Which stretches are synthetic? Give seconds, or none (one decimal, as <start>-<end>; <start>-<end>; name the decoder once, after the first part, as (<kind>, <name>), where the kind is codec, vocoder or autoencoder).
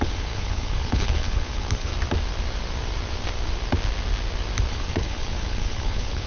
0.0-1.9 (codec, HILCodec); 4.7-6.3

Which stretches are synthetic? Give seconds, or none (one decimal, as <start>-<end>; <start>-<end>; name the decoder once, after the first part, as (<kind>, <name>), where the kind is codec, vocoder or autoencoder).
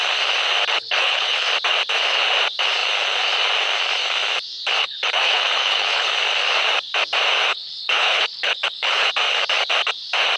0.7-1.5 (codec, HILCodec); 4.8-6.1; 7.5-9.1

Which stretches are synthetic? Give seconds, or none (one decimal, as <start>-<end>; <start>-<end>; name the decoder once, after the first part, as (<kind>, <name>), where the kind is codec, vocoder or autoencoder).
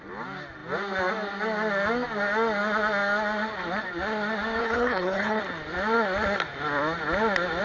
4.6-5.4 (codec, HILCodec)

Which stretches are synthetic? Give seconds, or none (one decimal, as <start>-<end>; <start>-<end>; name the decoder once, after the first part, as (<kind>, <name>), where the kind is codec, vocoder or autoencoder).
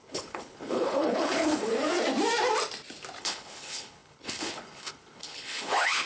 0.0-1.7 (codec, HILCodec); 3.2-6.1